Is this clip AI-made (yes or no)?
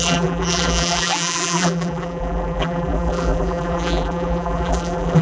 yes